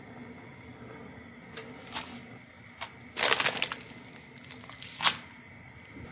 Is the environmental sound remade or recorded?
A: recorded